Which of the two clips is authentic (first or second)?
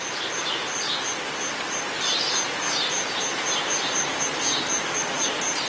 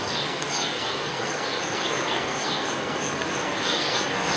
first